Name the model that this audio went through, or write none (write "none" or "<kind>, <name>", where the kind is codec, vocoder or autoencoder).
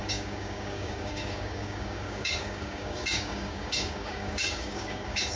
codec, DAC